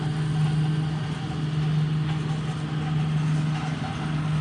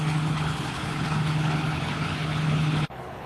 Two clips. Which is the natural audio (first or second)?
first